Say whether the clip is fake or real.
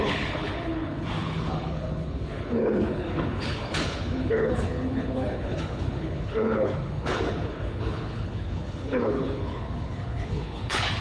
fake